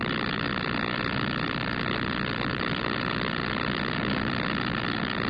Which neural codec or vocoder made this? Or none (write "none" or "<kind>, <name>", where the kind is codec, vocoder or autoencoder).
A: none